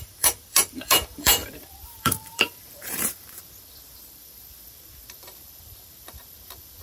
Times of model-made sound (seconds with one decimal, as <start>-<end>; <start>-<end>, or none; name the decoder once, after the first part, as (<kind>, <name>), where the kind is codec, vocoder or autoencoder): 0.0-6.8 (vocoder, BigVGAN v2)